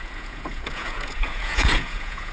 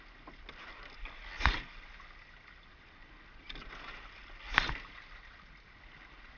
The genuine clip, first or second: second